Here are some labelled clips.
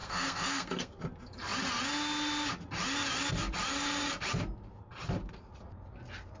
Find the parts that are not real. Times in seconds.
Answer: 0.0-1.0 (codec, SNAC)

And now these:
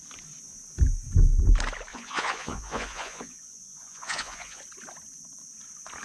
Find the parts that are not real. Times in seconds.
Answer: 1.9-4.6 (vocoder, Vocos)

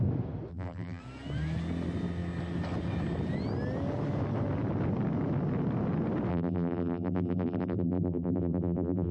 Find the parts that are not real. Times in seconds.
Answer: 0.5-1.0 (vocoder, BigVGAN v2); 6.3-9.1

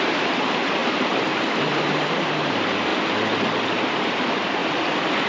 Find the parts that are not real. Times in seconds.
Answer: 0.0-2.9 (vocoder, BigVGAN v2); 3.7-4.6

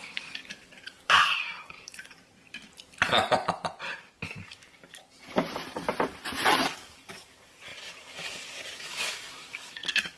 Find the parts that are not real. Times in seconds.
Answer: 0.0-2.2 (codec, DAC); 4.0-5.0; 6.6-10.2

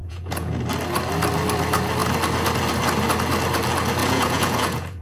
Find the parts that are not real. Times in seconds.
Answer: 0.0-0.6 (vocoder, Vocos); 4.0-5.0

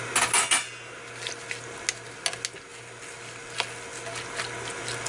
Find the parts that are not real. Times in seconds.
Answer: none